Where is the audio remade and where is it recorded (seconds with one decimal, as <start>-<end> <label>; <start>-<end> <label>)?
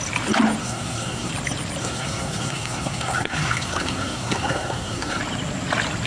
0.0-0.6 recorded; 0.6-1.3 remade; 1.3-1.8 recorded; 1.8-5.2 remade; 5.2-6.1 recorded